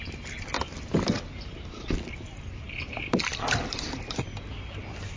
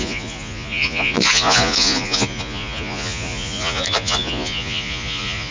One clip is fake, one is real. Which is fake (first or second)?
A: second